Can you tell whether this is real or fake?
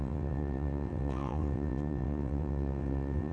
fake